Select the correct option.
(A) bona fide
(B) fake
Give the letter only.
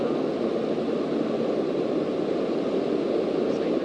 A